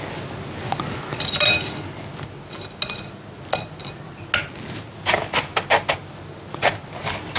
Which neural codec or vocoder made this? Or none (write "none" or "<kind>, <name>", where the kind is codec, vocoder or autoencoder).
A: none